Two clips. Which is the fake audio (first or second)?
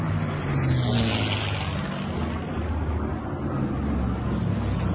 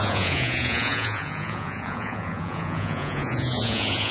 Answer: second